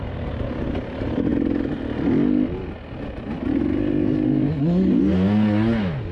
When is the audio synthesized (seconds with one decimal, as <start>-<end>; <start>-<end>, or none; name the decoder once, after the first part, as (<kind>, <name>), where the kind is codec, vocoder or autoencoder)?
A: none